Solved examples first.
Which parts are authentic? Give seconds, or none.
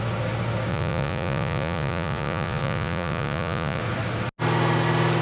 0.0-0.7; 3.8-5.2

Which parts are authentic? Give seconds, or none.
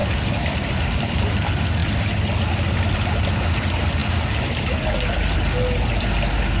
0.0-1.8; 2.9-6.6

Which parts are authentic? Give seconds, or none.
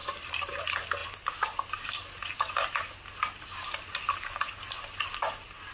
0.6-5.7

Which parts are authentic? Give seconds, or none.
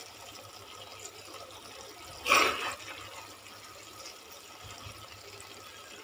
0.0-6.0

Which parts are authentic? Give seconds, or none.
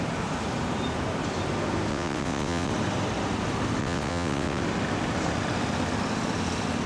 0.0-1.9; 2.7-3.8; 4.6-6.9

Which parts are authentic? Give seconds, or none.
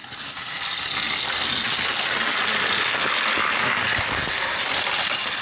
0.0-5.4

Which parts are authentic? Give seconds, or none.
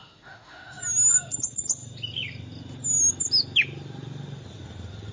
0.8-5.1